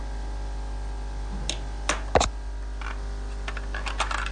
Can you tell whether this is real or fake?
real